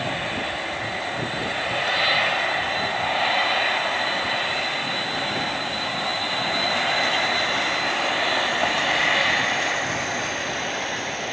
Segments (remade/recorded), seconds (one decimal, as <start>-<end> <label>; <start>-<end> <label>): 0.0-11.3 recorded